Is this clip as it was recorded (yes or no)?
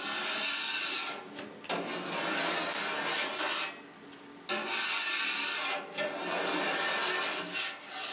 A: yes